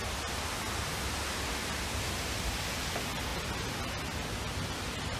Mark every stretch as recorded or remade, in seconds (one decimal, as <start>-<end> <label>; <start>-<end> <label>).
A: 0.0-5.2 recorded